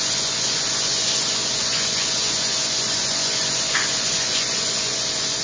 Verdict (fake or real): fake